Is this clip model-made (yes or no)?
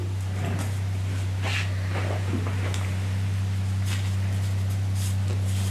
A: no